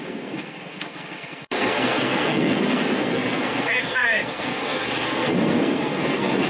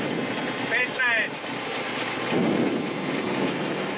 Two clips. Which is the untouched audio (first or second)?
second